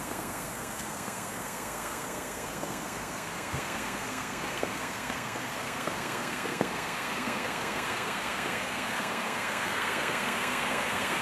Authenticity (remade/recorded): remade